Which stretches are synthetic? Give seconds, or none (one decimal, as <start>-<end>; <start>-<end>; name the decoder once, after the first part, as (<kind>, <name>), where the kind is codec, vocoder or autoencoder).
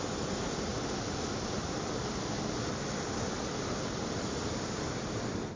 0.0-0.7 (vocoder, BigVGAN v2); 4.1-5.6